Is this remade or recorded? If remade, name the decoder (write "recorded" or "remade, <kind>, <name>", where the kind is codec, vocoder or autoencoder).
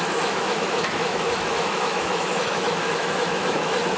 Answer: remade, autoencoder, DAC-VAE